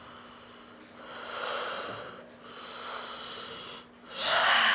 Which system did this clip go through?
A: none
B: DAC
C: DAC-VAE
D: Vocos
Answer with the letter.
A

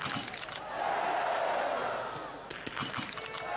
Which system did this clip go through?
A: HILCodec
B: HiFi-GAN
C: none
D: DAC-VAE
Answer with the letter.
C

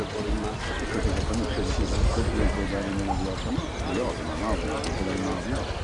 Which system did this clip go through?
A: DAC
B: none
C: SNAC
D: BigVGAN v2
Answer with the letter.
B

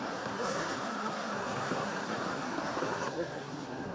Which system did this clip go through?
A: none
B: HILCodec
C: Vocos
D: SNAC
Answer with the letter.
D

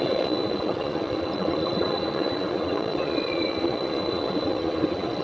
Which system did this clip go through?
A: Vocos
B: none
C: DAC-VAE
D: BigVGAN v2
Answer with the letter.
A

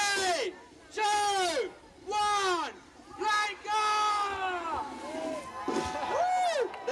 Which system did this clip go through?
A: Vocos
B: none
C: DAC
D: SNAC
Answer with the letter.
B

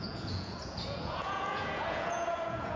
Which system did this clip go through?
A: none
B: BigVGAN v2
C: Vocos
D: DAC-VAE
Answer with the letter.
C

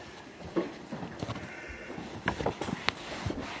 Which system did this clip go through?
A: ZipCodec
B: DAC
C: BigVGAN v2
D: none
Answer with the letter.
D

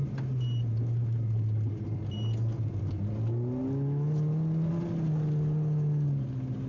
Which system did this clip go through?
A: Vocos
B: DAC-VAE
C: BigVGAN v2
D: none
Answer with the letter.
D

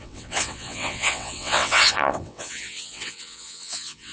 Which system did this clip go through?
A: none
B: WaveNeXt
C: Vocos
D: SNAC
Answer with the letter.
B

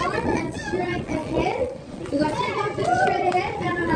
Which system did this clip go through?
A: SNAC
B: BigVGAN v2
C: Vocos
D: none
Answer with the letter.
C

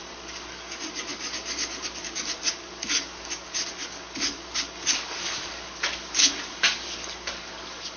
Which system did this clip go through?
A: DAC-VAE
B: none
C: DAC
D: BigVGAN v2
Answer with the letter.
C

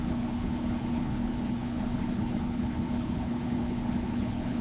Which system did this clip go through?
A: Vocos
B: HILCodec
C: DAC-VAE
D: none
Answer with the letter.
B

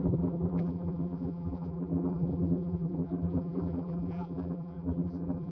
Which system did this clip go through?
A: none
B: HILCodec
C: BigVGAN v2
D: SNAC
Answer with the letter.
C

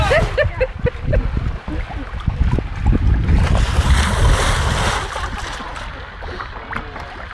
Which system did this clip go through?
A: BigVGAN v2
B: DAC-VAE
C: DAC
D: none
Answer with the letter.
D